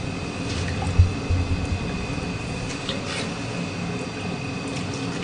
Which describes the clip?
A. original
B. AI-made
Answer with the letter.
A